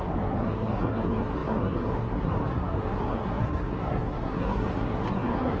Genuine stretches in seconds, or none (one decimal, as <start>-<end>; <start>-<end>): none